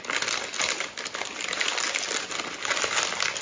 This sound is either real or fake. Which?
real